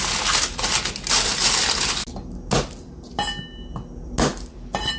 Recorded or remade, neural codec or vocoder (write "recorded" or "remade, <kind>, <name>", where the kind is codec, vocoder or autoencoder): recorded